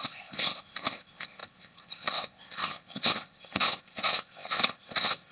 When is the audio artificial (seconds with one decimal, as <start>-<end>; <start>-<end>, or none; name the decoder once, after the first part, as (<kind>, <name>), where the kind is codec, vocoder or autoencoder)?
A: 0.0-5.3 (codec, ZipCodec)

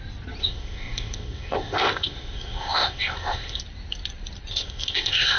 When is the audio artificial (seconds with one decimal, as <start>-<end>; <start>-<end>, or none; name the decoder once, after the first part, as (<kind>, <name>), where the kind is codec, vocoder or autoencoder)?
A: 0.4-3.6 (codec, ZipCodec); 4.5-5.4

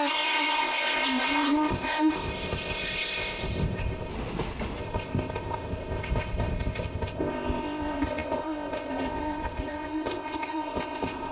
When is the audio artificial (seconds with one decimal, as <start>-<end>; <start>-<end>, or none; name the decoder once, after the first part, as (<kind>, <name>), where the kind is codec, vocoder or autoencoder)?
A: 0.0-4.1 (codec, ZipCodec); 4.8-11.3

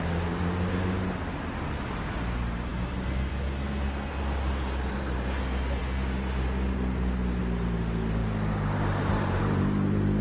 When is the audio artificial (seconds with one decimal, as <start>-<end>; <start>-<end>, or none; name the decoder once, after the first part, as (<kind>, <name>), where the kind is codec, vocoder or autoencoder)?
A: none

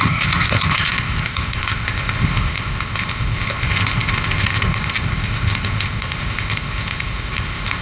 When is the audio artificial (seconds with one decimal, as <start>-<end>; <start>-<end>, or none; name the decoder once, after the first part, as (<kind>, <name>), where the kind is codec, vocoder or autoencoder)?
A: 0.0-7.8 (codec, ZipCodec)

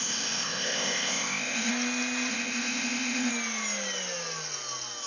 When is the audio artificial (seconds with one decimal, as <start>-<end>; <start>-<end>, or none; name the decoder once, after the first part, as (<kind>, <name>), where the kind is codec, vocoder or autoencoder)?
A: 0.0-1.7 (codec, ZipCodec); 2.3-3.3